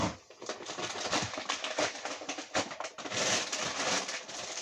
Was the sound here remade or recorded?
recorded